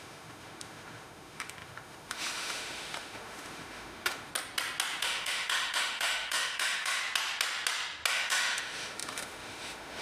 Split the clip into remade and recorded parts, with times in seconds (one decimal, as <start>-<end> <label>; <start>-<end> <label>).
0.0-4.3 remade; 4.3-5.0 recorded; 5.0-7.0 remade; 7.0-8.1 recorded; 8.1-10.0 remade